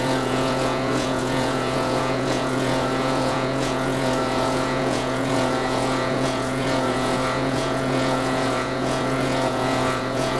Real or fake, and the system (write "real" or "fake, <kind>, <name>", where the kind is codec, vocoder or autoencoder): fake, vocoder, Vocos